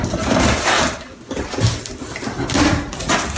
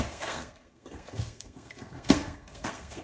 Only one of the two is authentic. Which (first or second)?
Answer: first